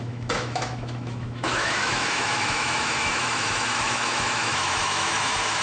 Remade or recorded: remade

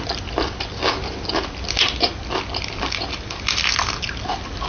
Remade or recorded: recorded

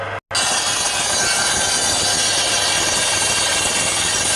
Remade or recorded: recorded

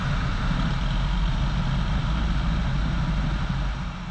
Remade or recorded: recorded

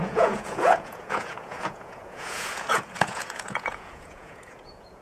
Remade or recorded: remade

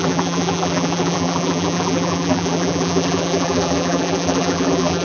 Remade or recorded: remade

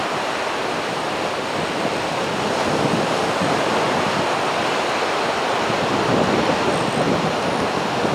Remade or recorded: recorded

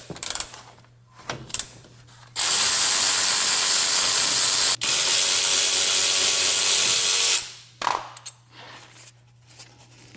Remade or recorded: recorded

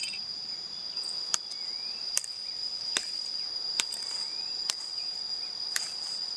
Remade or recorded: remade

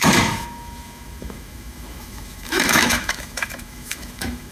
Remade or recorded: remade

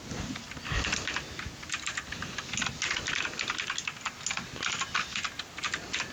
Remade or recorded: recorded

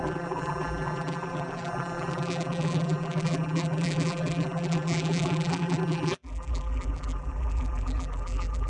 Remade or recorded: remade